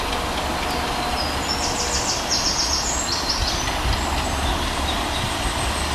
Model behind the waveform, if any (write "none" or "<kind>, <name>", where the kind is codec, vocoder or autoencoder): none